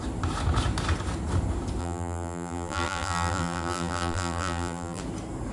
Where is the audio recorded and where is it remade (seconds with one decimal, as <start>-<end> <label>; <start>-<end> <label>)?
0.0-1.8 recorded; 1.8-5.0 remade; 5.0-5.5 recorded

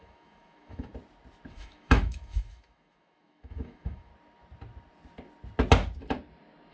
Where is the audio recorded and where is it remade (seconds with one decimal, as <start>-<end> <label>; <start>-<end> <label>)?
0.0-0.9 remade; 0.9-1.5 recorded; 1.5-4.1 remade; 4.1-6.7 recorded